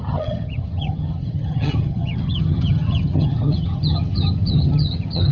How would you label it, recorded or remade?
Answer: remade